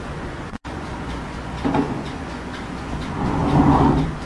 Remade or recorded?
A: remade